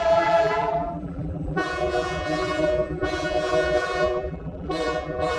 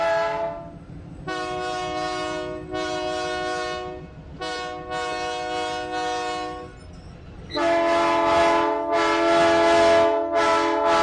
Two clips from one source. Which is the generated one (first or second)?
first